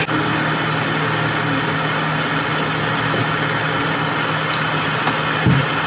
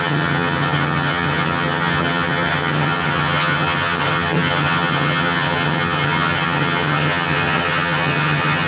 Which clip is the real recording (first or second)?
first